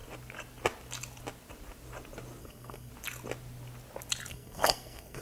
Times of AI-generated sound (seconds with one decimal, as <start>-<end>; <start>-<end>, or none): 2.4-2.9; 4.3-5.2